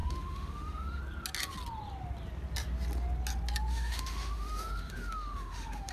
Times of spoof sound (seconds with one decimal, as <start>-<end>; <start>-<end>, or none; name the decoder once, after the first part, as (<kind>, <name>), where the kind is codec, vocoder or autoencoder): 0.0-1.0 (autoencoder, DAC-VAE); 3.7-5.9